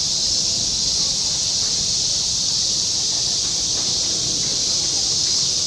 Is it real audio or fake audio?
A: fake